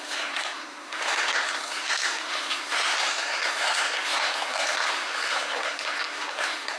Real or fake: fake